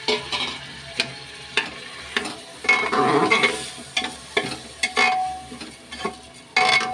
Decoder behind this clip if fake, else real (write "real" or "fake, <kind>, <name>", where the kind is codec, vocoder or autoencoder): real